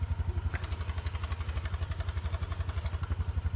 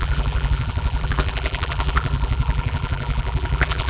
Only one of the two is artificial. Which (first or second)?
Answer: second